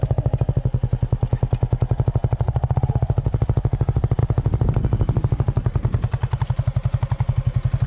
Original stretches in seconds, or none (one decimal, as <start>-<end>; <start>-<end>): 0.0-7.9